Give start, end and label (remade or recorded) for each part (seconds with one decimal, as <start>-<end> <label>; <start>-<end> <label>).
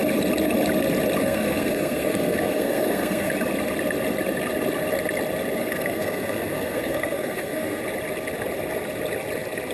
0.0-1.2 recorded; 1.2-3.3 remade; 3.3-5.6 recorded; 5.6-7.8 remade; 7.8-9.7 recorded